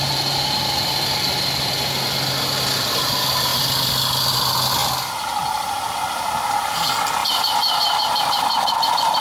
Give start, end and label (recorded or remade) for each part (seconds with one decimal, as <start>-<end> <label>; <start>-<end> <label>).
0.0-4.8 recorded; 4.8-5.7 remade; 5.7-7.2 recorded; 7.2-9.2 remade